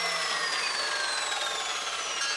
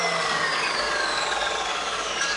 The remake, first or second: second